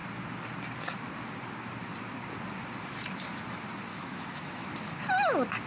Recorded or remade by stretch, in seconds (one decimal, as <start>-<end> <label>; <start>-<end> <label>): 0.0-3.9 recorded; 3.9-4.7 remade; 4.7-5.7 recorded